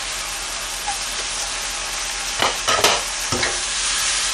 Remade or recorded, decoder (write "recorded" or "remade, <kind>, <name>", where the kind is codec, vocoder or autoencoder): recorded